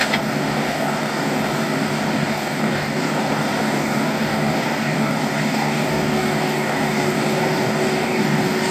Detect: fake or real fake